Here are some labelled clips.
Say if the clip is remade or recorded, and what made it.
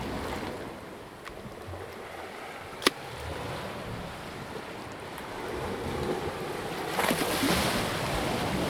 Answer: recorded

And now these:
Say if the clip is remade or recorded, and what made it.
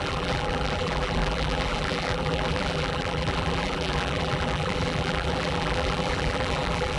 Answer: remade, vocoder, BigVGAN v2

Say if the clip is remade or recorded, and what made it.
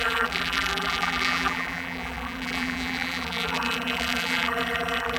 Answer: remade, vocoder, BigVGAN v2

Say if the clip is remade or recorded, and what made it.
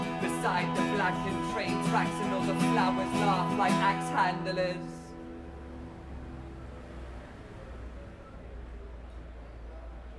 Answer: recorded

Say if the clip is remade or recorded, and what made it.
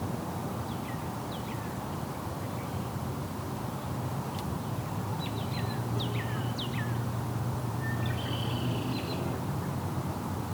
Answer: remade, vocoder, BigVGAN v2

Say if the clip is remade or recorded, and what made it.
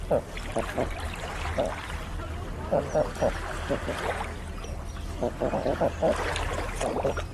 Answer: recorded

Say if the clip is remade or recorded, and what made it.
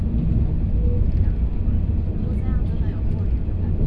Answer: recorded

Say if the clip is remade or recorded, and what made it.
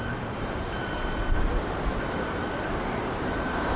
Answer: remade, vocoder, BigVGAN v2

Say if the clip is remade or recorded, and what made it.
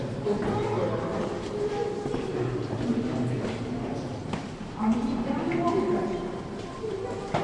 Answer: recorded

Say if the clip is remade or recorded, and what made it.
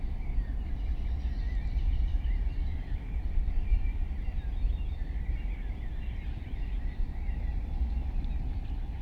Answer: remade, vocoder, BigVGAN v2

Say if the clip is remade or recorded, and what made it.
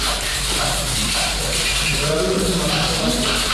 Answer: remade, vocoder, BigVGAN v2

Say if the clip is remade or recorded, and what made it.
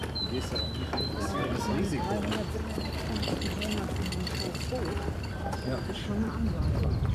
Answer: remade, vocoder, BigVGAN v2